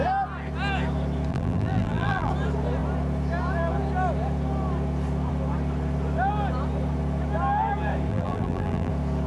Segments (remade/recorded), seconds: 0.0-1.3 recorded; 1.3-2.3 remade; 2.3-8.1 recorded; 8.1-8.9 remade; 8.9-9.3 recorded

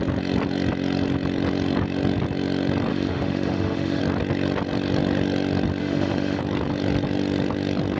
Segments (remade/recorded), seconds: 0.0-2.9 recorded; 2.9-4.0 remade; 4.0-5.8 recorded; 5.8-6.4 remade; 6.4-8.0 recorded

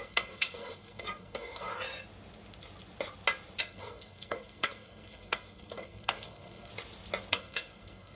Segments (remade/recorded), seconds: 0.0-1.7 remade; 1.7-3.6 recorded; 3.6-6.7 remade; 6.7-7.3 recorded; 7.3-8.2 remade

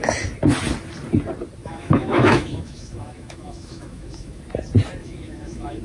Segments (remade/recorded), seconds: 0.0-1.6 recorded; 1.6-4.4 remade; 4.4-5.0 recorded; 5.0-5.8 remade

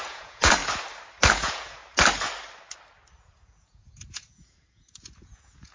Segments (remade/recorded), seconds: 0.0-0.6 remade; 0.6-1.3 recorded; 1.3-1.8 remade; 1.8-3.2 recorded; 3.2-5.7 remade

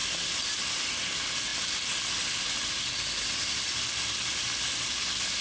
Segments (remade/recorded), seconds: 0.0-5.4 recorded

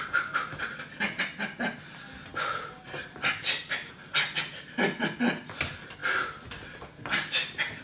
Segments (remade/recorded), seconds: 0.0-7.8 recorded